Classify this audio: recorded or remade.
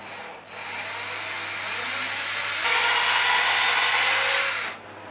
recorded